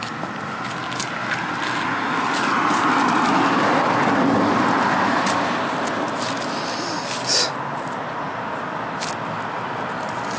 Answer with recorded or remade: recorded